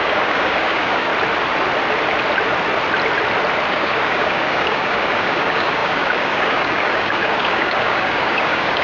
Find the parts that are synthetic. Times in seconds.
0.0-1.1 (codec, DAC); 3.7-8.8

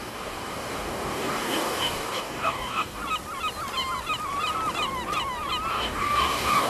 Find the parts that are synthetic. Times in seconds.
0.0-3.0 (codec, DAC); 5.7-6.7